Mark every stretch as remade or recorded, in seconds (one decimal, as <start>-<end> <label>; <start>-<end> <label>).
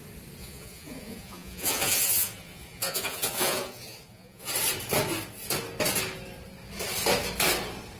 0.0-0.4 recorded; 0.4-4.5 remade; 4.5-8.0 recorded